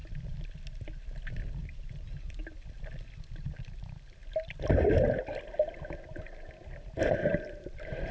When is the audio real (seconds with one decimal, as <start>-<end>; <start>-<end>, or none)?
0.0-1.6; 2.4-3.4; 4.2-7.0